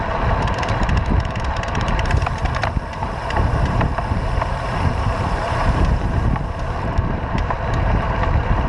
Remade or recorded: remade